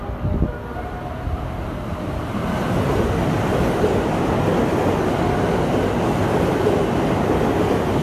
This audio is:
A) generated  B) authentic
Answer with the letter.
B